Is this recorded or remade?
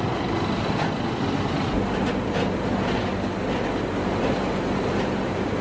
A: recorded